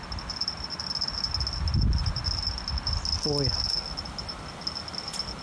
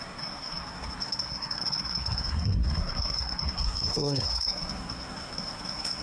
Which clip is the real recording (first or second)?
first